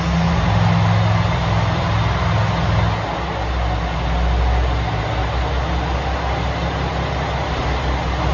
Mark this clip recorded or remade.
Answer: recorded